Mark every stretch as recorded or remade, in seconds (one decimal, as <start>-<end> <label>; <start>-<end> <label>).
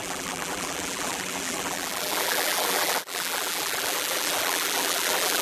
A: 0.0-5.4 remade